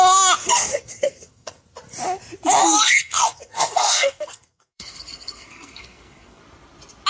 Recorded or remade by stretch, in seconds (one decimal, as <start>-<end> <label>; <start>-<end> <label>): 0.0-0.4 recorded; 0.4-1.6 remade; 1.6-2.6 recorded; 2.6-6.4 remade; 6.4-7.1 recorded